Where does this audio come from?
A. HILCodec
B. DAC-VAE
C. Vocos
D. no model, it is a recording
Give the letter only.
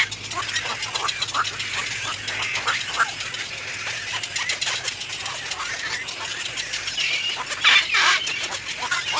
D